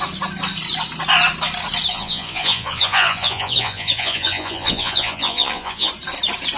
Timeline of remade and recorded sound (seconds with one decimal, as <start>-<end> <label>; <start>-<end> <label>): 0.0-1.9 recorded; 1.9-5.9 remade; 5.9-6.6 recorded